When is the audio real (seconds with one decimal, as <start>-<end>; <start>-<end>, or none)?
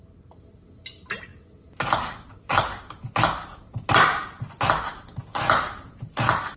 0.0-6.6